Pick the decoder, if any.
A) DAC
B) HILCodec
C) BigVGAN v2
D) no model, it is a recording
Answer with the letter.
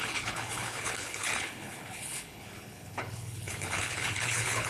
B